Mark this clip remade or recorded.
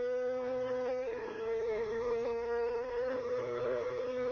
remade